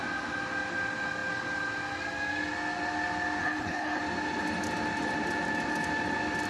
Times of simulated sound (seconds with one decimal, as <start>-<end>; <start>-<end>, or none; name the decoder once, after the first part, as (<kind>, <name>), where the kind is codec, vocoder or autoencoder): 3.4-4.0 (codec, HILCodec)

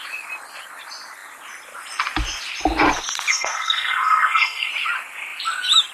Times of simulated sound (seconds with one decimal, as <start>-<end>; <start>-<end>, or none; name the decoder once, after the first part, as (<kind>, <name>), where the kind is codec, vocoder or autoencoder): 3.3-4.7 (codec, SNAC)

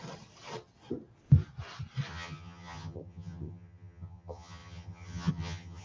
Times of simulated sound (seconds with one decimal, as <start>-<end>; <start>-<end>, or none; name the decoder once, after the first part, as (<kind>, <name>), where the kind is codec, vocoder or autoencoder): 2.1-5.8 (vocoder, HiFi-GAN)

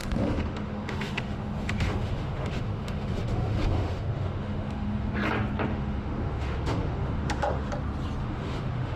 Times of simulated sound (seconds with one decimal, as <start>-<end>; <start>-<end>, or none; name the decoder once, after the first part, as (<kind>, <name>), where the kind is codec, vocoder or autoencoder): 0.0-5.1 (autoencoder, DAC-VAE); 5.7-7.7; 8.2-9.0

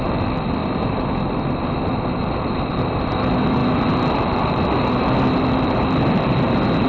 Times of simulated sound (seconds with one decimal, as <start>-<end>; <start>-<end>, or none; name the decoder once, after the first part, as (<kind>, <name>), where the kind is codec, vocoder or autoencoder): none

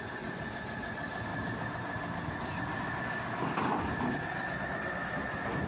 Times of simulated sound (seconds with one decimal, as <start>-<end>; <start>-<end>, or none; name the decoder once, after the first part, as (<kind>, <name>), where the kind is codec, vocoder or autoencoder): none

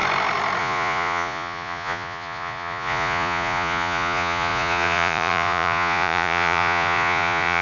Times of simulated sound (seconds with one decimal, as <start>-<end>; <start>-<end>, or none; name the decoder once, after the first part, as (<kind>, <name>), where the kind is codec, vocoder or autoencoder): 0.6-7.6 (vocoder, Vocos)

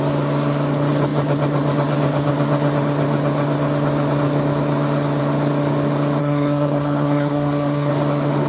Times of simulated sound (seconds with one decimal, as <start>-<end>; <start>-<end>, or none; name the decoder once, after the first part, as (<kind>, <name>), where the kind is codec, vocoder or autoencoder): 6.2-7.9 (codec, SNAC)